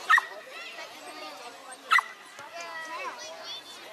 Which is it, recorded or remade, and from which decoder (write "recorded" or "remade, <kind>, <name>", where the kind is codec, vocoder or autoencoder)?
recorded